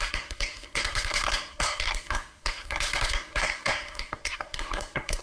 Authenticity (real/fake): fake